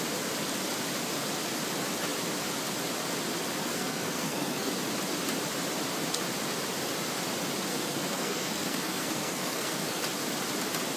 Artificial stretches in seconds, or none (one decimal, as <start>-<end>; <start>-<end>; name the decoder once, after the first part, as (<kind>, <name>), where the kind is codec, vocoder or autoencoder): 3.6-4.7 (codec, SNAC); 7.7-10.0